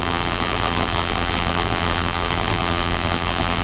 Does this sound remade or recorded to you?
remade